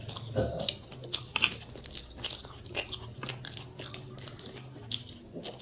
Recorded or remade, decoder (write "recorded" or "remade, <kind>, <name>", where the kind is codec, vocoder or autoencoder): recorded